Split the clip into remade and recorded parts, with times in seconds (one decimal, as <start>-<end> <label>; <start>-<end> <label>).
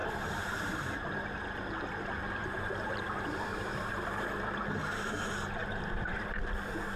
0.0-1.1 remade; 1.1-2.4 recorded; 2.4-3.9 remade; 3.9-5.6 recorded; 5.6-6.4 remade; 6.4-7.0 recorded